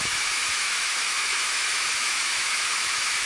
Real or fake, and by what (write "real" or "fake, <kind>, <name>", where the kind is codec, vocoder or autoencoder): fake, autoencoder, DAC-VAE